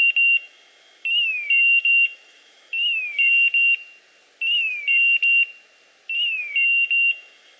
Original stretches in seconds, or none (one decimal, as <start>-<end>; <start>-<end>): 3.3-6.4

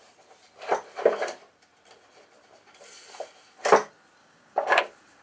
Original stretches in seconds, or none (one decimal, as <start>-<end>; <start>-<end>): 0.0-4.2; 4.8-5.2

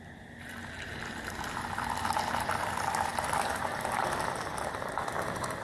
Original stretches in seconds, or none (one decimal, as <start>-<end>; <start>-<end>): 0.0-5.6